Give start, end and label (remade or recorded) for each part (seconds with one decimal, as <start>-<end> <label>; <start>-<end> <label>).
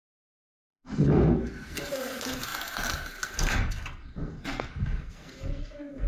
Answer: 0.0-6.1 remade